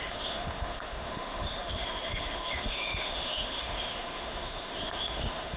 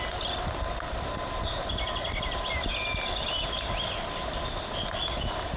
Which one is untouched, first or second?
second